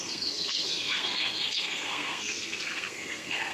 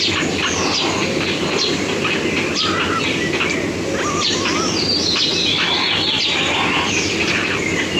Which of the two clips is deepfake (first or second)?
first